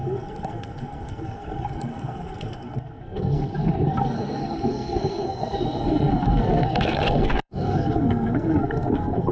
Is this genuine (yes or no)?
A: no